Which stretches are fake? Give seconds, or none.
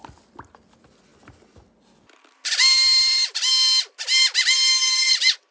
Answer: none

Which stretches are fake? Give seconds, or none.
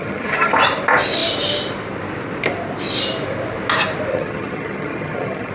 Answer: 0.0-0.5 (vocoder, HiFi-GAN); 4.1-5.5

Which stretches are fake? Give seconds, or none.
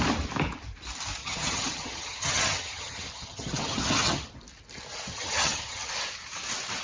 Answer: 1.2-4.3 (vocoder, HiFi-GAN); 5.1-5.9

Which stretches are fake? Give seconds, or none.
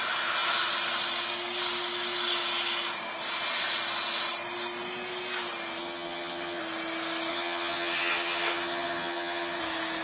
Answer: 5.8-6.6 (vocoder, HiFi-GAN); 7.3-9.6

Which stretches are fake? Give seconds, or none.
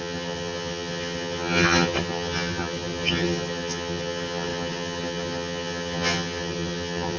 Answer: 0.0-7.2 (vocoder, HiFi-GAN)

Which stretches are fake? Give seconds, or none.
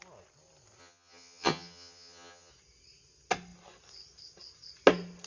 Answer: 0.8-2.5 (vocoder, HiFi-GAN)